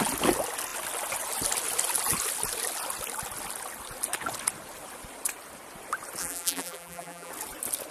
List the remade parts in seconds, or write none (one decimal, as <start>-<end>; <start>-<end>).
6.2-7.3